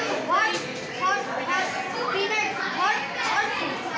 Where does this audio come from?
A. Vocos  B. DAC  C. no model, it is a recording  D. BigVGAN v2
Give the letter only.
C